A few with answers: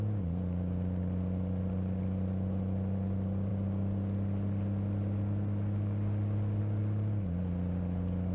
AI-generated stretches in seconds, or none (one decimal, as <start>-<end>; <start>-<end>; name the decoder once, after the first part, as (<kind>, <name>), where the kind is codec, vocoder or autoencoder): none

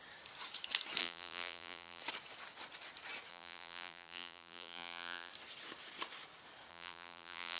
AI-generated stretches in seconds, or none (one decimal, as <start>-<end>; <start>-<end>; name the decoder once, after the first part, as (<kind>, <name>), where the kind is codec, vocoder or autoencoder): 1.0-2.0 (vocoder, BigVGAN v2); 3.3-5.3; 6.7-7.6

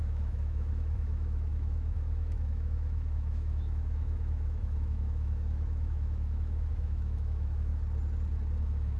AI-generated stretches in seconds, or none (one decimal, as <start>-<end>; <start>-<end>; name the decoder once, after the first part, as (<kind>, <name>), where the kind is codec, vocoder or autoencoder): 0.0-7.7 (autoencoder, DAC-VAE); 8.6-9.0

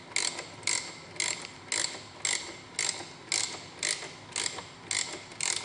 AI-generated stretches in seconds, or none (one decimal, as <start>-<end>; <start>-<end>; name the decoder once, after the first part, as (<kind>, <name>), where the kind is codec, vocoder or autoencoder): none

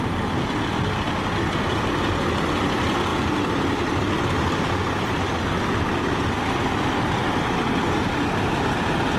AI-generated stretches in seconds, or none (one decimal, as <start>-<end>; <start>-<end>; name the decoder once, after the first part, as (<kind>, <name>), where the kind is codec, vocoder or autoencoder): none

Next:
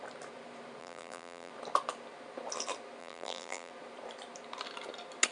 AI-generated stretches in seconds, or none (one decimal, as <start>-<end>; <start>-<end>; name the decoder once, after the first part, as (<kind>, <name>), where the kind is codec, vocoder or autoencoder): 0.8-1.5 (vocoder, BigVGAN v2); 3.0-3.7